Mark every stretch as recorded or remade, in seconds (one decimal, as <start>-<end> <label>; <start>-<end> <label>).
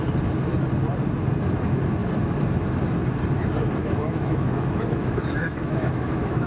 0.0-3.8 recorded; 3.8-6.5 remade